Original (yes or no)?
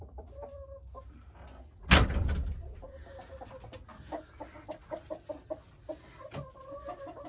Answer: yes